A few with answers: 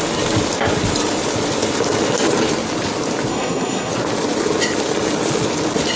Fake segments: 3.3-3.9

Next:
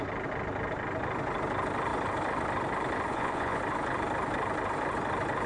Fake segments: 3.1-3.6

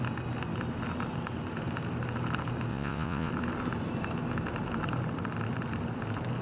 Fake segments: 2.7-3.3